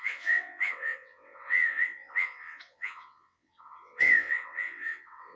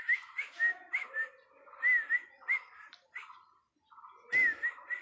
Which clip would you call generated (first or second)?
first